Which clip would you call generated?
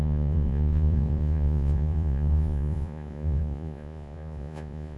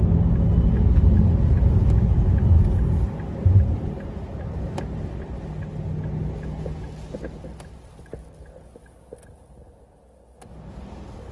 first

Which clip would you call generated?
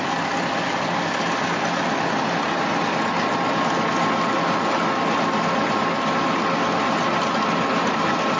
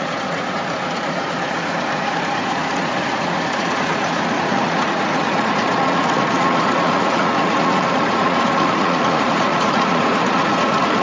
second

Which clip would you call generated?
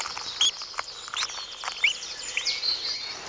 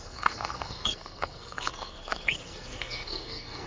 second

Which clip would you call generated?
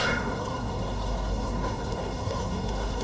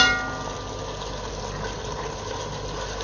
first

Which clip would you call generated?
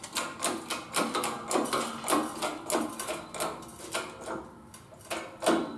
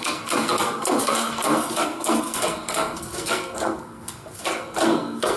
second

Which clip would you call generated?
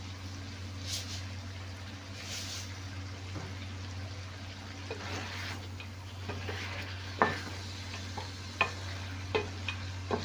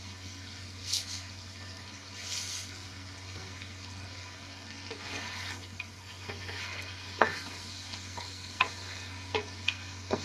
second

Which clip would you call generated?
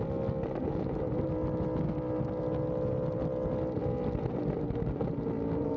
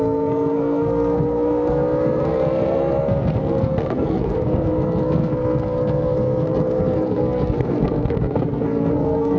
second